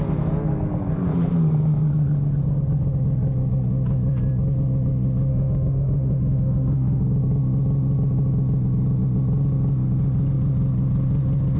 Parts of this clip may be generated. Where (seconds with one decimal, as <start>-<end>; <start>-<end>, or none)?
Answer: 5.3-7.0